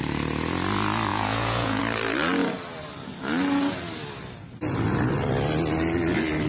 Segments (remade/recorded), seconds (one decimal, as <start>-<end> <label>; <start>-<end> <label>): 0.0-1.1 recorded; 1.1-1.8 remade; 1.8-6.5 recorded